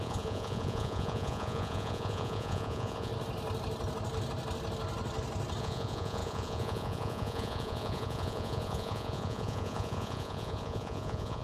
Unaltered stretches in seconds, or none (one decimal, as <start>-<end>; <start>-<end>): 3.1-5.6